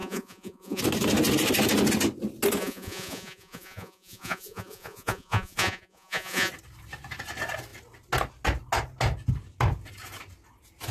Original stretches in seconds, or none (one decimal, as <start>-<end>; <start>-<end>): 0.8-2.6; 6.5-10.9